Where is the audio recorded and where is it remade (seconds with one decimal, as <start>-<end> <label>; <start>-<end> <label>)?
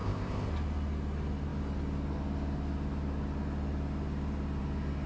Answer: 0.0-0.5 remade; 0.5-5.1 recorded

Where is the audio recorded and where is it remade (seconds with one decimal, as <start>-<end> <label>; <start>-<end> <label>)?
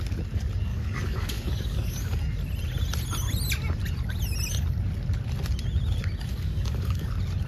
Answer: 0.0-0.7 recorded; 0.7-2.2 remade; 2.2-6.3 recorded; 6.3-7.1 remade; 7.1-7.5 recorded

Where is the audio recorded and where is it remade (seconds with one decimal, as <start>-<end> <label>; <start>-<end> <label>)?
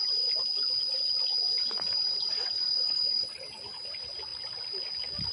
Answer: 0.0-4.3 recorded; 4.3-5.3 remade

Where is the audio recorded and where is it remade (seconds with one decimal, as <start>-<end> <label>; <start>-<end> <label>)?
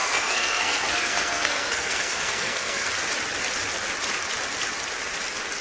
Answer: 0.0-2.9 remade; 2.9-5.6 recorded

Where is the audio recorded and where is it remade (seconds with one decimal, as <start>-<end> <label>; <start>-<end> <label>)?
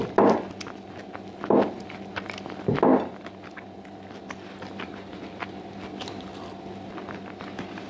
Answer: 0.0-7.9 recorded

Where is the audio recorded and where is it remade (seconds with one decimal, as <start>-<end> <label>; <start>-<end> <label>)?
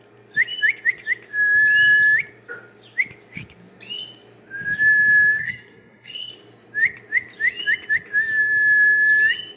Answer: 0.0-5.4 recorded; 5.4-6.3 remade; 6.3-9.6 recorded